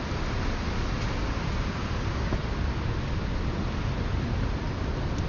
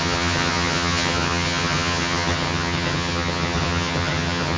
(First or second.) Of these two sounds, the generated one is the second